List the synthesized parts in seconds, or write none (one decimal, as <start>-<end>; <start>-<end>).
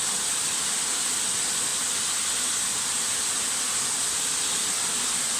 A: 1.7-3.9